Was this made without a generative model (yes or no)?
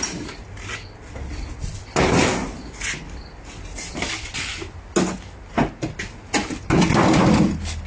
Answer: yes